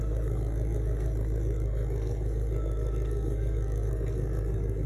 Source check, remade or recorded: remade